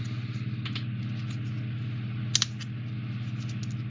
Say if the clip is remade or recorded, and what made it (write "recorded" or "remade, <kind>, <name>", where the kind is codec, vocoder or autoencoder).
recorded